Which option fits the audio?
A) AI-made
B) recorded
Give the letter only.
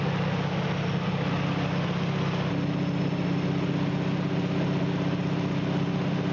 B